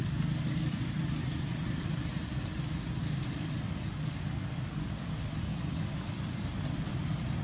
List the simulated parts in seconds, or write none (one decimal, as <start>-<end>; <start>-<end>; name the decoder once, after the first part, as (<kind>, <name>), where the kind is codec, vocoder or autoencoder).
0.5-7.4 (vocoder, BigVGAN v2)